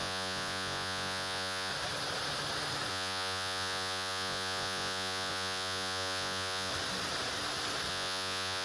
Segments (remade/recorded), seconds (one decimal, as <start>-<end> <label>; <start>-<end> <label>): 0.0-1.7 remade; 1.7-2.9 recorded; 2.9-6.7 remade; 6.7-7.9 recorded; 7.9-8.6 remade